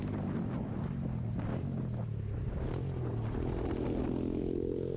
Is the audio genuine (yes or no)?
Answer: yes